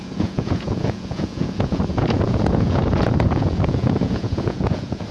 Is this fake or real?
fake